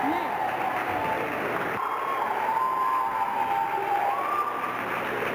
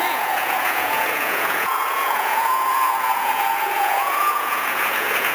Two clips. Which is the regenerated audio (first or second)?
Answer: second